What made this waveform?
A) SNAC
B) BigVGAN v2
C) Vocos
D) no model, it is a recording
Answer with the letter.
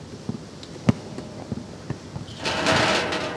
D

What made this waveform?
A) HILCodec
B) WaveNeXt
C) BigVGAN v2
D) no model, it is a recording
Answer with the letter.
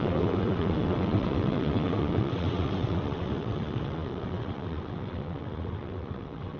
B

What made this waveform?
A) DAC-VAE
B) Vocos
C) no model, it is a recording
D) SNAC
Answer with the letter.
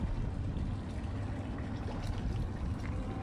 C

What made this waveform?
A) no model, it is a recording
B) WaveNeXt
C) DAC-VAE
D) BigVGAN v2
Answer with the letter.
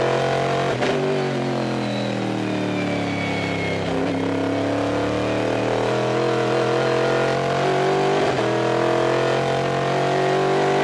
A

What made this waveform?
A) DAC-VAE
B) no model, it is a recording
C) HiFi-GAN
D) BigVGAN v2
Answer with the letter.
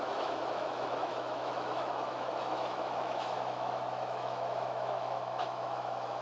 A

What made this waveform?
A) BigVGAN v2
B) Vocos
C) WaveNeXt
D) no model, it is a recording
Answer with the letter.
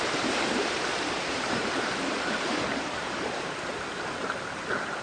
A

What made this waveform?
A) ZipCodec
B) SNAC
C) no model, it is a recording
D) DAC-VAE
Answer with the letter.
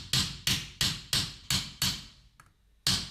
C